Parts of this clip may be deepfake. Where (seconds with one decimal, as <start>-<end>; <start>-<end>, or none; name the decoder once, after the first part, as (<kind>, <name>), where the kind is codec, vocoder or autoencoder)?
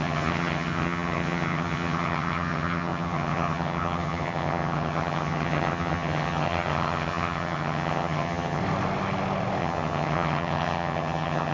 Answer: 0.0-8.6 (vocoder, HiFi-GAN); 9.6-11.5